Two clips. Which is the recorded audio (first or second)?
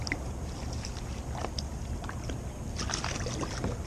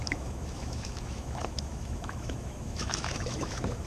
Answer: first